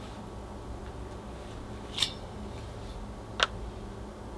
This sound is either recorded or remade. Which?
recorded